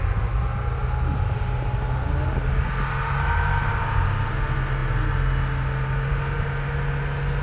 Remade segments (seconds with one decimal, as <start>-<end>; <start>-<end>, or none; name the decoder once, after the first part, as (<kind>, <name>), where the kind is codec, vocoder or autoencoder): none

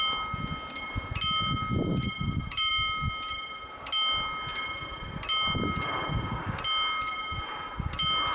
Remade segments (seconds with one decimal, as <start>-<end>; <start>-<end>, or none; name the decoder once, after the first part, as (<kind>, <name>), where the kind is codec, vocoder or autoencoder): none

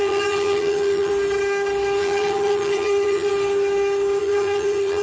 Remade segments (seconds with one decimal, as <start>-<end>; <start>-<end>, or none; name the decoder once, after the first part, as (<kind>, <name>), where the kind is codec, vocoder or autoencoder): 0.0-1.1 (vocoder, HiFi-GAN); 2.0-3.3; 4.2-5.0